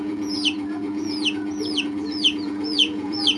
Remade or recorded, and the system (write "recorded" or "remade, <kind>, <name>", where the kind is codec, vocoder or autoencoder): remade, vocoder, Vocos